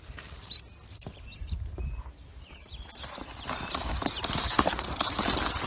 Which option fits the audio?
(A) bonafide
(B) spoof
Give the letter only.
A